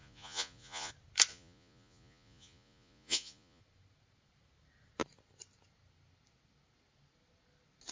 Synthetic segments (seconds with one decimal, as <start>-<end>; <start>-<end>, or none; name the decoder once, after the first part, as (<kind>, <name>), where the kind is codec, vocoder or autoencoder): 0.0-0.9 (vocoder, Vocos); 1.3-3.6